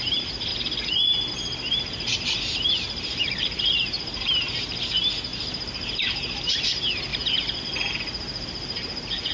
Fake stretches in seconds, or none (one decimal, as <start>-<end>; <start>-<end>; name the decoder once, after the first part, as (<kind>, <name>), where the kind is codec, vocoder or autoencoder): 0.0-0.5 (vocoder, BigVGAN v2); 1.3-7.1; 7.6-9.3